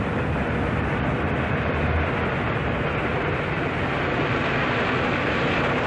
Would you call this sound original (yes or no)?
yes